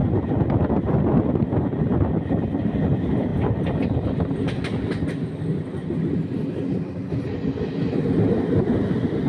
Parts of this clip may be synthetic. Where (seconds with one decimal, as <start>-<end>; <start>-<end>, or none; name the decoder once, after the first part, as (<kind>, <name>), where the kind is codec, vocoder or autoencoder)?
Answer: 2.9-3.3 (vocoder, BigVGAN v2); 8.1-9.3